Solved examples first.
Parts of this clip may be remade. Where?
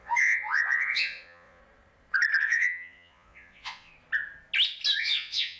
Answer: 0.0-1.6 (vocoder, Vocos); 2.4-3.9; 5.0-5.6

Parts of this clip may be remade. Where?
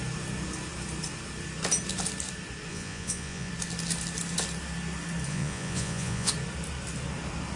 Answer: 2.7-3.5 (vocoder, Vocos); 5.3-6.3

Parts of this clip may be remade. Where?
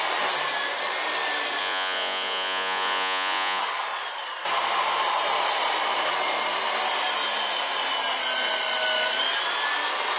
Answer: 1.6-3.6 (vocoder, Vocos)